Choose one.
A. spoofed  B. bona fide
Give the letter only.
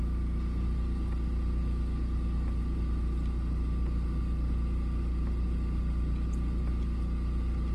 B